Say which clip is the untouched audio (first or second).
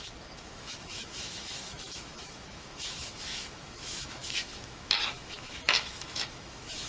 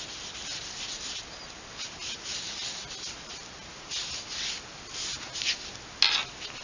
second